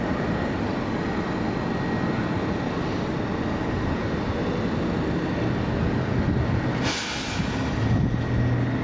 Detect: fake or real real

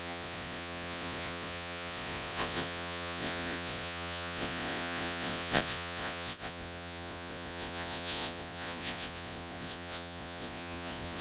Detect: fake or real fake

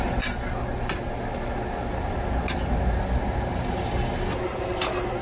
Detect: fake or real real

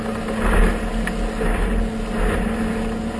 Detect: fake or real real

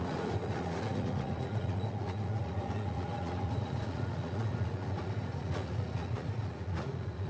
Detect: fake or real fake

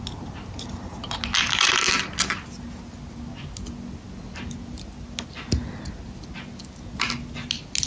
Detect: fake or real real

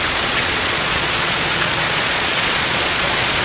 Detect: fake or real fake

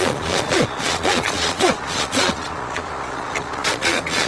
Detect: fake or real fake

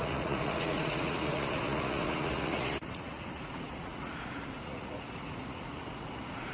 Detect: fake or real fake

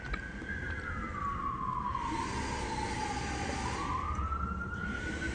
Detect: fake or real real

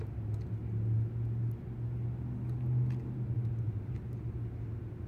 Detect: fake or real real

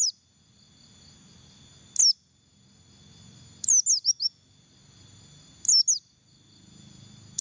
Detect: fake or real real